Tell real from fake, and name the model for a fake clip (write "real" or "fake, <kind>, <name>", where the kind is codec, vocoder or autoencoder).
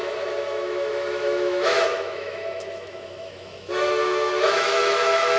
fake, autoencoder, DAC-VAE